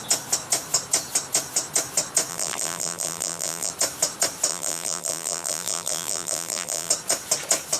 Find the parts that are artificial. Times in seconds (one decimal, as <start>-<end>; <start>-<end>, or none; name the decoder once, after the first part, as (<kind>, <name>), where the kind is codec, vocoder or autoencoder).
2.3-3.7 (vocoder, BigVGAN v2); 4.5-6.9